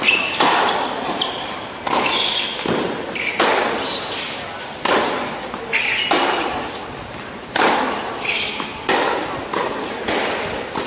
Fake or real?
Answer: real